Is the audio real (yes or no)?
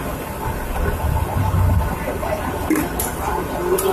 yes